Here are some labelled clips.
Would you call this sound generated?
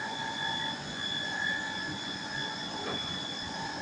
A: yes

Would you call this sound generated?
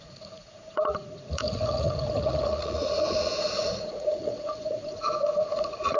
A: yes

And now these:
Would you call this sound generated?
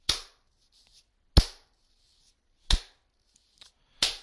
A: no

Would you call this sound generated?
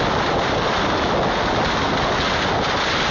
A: no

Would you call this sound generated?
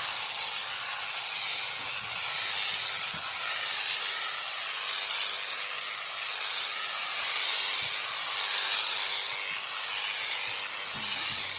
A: no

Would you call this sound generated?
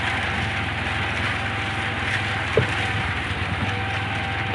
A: no